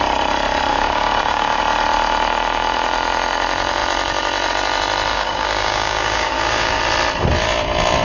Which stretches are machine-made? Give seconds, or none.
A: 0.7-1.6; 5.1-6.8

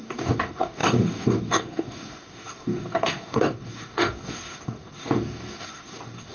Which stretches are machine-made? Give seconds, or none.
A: 0.0-6.3

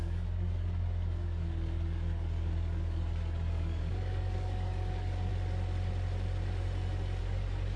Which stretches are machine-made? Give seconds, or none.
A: 0.0-5.3; 7.2-7.8